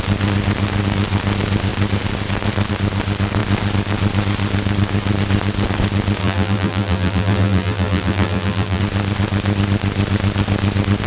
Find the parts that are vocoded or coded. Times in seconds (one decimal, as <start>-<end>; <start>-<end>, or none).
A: 6.2-8.8